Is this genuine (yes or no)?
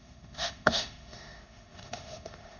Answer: no